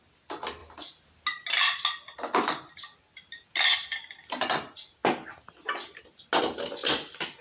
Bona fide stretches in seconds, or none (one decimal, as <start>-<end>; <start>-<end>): 0.0-7.4